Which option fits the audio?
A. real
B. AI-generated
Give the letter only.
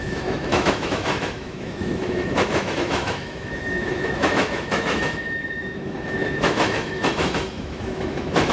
B